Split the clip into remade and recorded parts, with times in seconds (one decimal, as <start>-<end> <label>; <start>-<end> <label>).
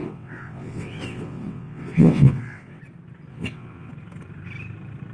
0.0-2.8 remade; 2.8-3.3 recorded; 3.3-3.9 remade; 3.9-5.1 recorded